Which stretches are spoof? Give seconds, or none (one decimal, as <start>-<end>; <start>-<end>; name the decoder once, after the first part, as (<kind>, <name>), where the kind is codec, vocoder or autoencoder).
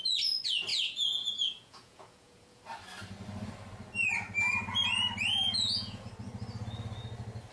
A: 0.7-2.6 (vocoder, Vocos); 5.3-6.1